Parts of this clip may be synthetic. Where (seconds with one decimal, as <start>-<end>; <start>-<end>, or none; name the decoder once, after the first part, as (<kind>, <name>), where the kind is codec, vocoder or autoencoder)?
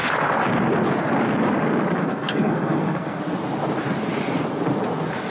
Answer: 2.0-3.2 (codec, SNAC)